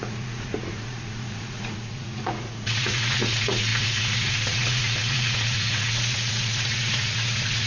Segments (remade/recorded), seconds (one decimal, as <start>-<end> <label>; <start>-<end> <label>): 0.0-7.7 remade